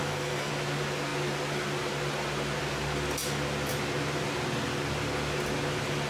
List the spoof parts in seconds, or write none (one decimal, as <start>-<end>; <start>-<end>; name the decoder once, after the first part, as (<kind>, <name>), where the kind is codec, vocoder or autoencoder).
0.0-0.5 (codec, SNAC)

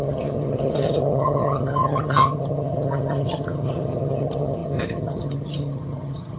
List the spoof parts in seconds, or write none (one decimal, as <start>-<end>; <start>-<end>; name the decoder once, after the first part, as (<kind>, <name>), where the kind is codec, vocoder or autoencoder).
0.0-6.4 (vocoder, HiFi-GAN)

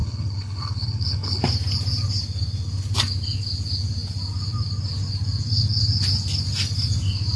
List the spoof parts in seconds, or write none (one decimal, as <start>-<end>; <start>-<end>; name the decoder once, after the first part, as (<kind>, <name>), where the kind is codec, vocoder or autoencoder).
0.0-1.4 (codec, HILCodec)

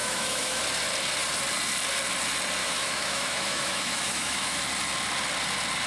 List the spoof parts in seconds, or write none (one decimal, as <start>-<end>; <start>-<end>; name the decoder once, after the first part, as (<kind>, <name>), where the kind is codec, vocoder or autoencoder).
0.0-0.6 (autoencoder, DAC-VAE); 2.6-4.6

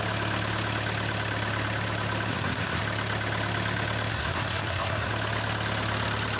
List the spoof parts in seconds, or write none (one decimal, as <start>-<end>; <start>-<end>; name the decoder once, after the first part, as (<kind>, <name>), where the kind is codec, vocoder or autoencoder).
2.3-2.8 (codec, SNAC); 4.1-5.1

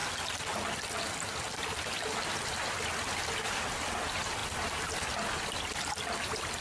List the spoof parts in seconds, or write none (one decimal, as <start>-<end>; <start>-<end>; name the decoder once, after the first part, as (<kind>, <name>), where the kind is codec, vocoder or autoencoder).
none

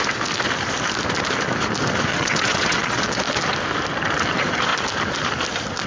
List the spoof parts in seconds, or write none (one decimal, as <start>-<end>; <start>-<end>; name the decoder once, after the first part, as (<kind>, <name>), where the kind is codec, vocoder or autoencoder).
2.1-3.2 (vocoder, WaveNeXt)